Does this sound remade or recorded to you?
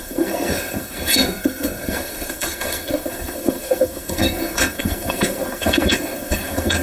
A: remade